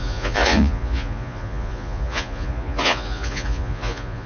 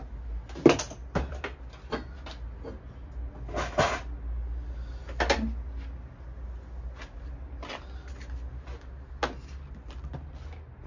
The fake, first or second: first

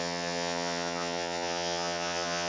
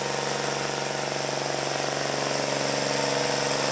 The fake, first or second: first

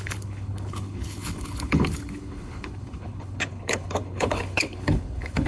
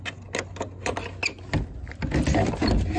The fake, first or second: first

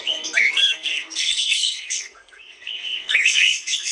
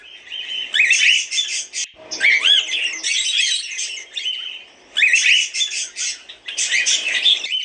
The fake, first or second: first